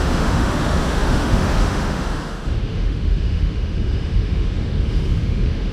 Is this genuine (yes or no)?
no